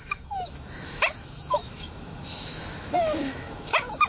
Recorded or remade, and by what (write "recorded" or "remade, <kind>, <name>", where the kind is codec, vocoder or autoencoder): remade, autoencoder, DAC-VAE